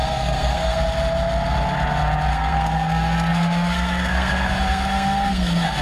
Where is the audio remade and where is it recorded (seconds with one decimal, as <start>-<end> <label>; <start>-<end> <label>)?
0.0-0.8 remade; 0.8-2.3 recorded; 2.3-5.8 remade